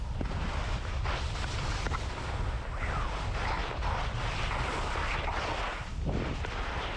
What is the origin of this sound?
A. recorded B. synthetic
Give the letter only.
A